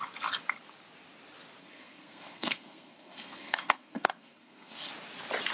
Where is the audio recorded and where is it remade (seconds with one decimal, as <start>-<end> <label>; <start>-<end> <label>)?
0.0-1.6 recorded; 1.6-4.9 remade; 4.9-5.5 recorded